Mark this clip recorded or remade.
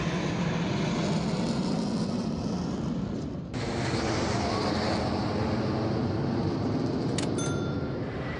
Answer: recorded